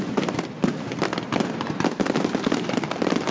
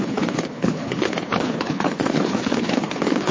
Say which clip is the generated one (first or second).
second